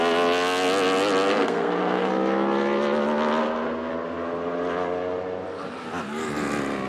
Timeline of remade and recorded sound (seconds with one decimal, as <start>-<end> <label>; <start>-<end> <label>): 0.0-1.3 recorded; 1.3-2.1 remade; 2.1-3.4 recorded; 3.4-3.9 remade; 3.9-6.9 recorded